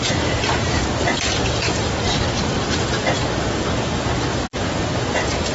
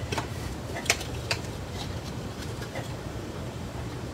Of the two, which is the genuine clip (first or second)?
first